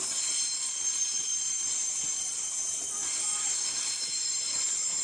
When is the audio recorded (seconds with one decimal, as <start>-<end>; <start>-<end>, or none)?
0.0-5.0